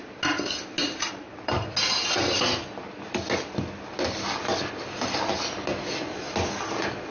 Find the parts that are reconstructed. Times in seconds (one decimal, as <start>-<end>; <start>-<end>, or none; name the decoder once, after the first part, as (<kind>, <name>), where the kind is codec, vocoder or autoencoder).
0.8-1.6 (vocoder, BigVGAN v2)